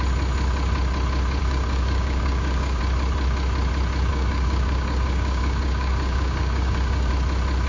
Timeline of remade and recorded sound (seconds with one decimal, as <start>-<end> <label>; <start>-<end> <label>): 0.0-1.4 recorded; 1.4-2.8 remade; 2.8-4.1 recorded; 4.1-7.1 remade; 7.1-7.7 recorded